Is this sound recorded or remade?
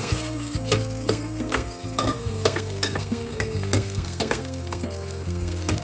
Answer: remade